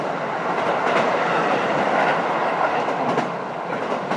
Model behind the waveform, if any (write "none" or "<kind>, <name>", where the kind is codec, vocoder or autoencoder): none